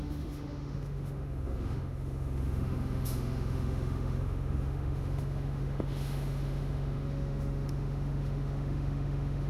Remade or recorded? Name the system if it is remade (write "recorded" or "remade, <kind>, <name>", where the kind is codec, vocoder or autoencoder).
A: remade, autoencoder, DAC-VAE